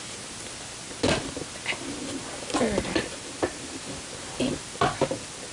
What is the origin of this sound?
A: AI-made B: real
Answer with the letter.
B